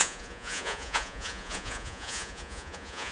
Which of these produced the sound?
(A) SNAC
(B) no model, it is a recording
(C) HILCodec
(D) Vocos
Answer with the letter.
D